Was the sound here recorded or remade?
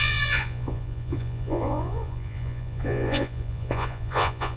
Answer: remade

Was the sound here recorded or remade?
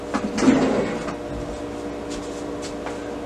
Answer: recorded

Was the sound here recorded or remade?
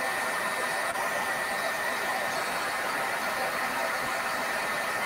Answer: remade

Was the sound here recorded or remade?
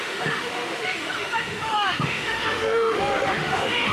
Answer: remade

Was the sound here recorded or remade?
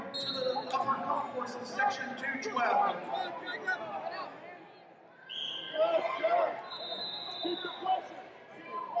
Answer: recorded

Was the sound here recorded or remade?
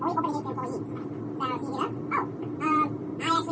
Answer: remade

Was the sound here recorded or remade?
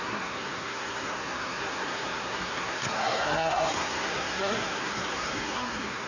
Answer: remade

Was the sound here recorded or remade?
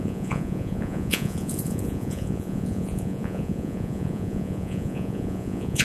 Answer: remade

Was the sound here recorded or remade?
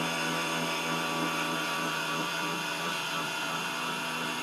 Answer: remade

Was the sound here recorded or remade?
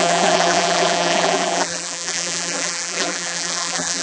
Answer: remade